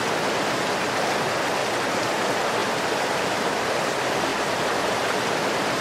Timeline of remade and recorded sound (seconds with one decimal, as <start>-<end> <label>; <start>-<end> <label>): 0.0-5.8 recorded